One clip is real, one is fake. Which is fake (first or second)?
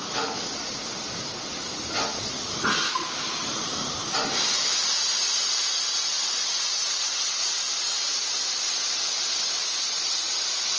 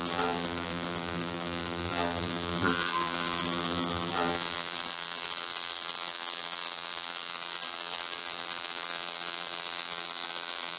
second